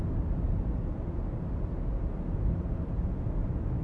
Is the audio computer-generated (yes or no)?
no